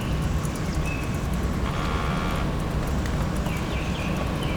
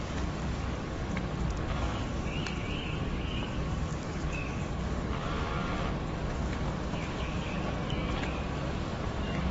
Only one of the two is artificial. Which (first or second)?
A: second